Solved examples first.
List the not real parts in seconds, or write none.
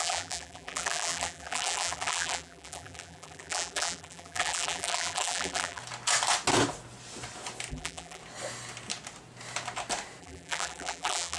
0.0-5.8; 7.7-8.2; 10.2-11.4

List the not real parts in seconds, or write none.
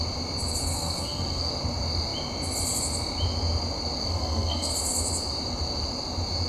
0.6-1.5; 4.0-4.7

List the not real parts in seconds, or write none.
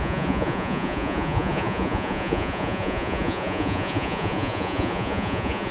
0.0-5.7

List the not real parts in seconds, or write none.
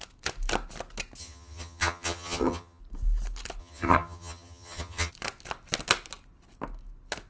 1.2-2.8; 3.6-5.1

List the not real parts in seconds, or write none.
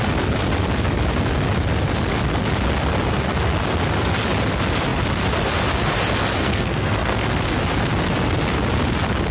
6.4-7.4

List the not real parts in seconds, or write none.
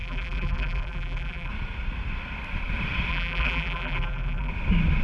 0.0-1.5; 3.1-4.5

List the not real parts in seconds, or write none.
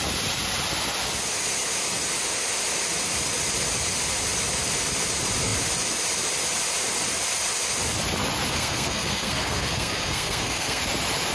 8.5-10.8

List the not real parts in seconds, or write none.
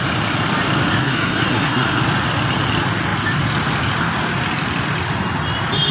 1.0-2.0